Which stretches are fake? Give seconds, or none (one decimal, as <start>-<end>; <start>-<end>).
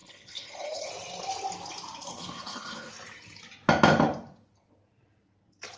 0.0-0.9; 2.1-2.9